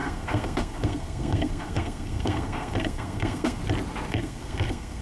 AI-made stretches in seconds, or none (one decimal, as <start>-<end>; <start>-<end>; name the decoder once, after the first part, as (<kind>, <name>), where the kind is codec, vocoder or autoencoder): 0.0-3.6 (codec, SNAC); 4.1-5.0

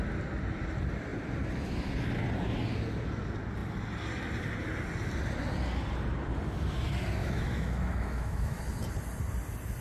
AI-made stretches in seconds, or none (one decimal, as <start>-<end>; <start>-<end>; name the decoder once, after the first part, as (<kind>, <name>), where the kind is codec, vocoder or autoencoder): 7.2-8.6 (autoencoder, DAC-VAE)

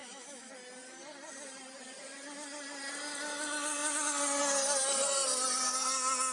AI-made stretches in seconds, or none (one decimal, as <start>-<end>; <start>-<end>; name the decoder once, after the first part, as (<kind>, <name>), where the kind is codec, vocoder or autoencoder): 0.0-0.5 (autoencoder, DAC-VAE)

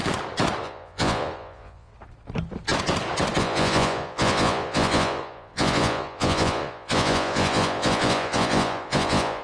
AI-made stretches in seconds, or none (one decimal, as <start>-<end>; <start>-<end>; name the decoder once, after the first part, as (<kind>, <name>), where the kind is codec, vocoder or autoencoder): 0.6-1.9 (vocoder, Vocos); 3.4-9.4